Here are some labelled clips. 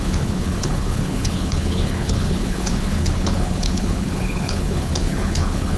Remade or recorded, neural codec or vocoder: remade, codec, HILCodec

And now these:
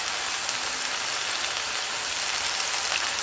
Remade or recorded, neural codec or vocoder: recorded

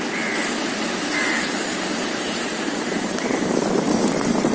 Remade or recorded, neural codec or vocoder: recorded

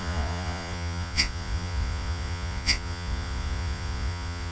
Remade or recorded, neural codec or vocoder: remade, vocoder, Vocos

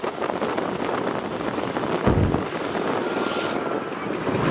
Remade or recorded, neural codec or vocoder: recorded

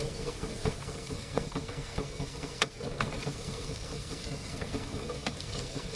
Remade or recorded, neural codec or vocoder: remade, codec, SNAC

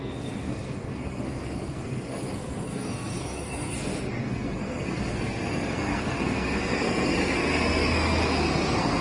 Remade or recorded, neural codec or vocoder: remade, codec, SNAC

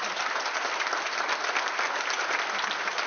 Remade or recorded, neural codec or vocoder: recorded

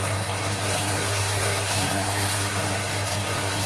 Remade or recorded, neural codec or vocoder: remade, codec, SNAC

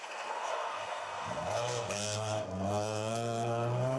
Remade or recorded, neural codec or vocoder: remade, codec, SNAC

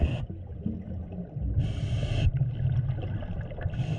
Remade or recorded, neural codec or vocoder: recorded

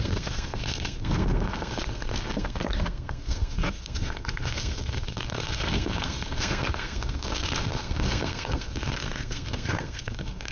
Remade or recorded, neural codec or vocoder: remade, codec, SNAC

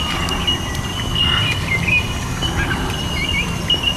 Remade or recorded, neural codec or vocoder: remade, vocoder, BigVGAN v2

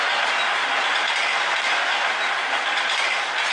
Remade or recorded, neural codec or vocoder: recorded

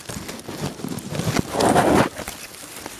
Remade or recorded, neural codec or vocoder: recorded